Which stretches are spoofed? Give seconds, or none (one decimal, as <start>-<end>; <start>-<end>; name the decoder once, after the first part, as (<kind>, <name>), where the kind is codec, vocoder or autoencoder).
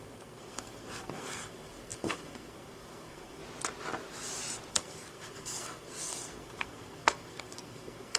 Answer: 0.0-3.4 (codec, SNAC); 4.7-8.2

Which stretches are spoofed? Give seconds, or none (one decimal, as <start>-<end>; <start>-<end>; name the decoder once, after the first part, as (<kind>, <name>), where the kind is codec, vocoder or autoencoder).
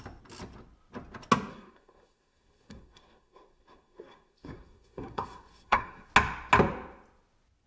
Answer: 1.5-6.1 (codec, SNAC)